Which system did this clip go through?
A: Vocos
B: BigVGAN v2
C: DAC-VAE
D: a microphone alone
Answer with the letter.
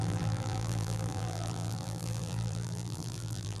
B